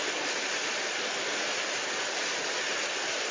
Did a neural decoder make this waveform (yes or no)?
no